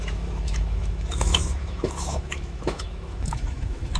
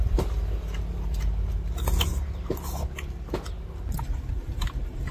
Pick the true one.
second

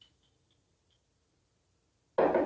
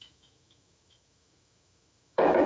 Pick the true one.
first